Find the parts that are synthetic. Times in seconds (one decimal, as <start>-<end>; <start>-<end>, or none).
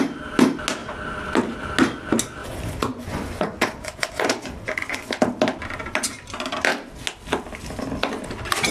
2.4-5.1